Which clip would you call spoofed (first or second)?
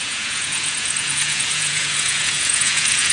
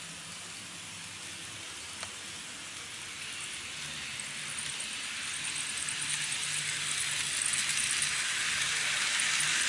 first